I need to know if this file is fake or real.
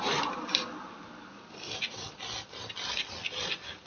real